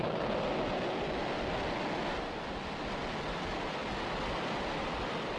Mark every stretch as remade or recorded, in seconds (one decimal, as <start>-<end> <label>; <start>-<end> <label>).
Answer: 0.0-5.4 recorded